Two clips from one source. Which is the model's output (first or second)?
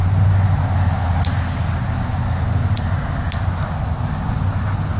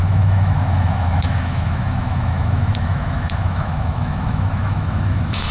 second